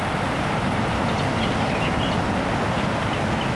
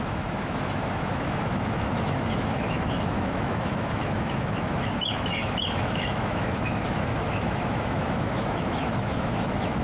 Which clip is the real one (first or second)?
first